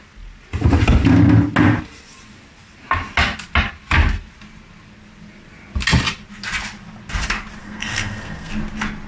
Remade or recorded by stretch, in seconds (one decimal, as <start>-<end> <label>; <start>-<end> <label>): 0.0-7.6 recorded; 7.6-8.5 remade; 8.5-9.1 recorded